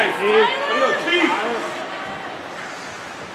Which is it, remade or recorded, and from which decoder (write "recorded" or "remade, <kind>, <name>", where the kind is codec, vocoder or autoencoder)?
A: recorded